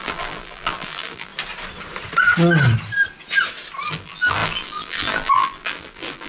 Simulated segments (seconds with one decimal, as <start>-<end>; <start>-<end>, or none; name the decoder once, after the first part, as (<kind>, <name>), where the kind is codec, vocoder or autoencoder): 0.0-1.3 (vocoder, BigVGAN v2); 3.9-6.3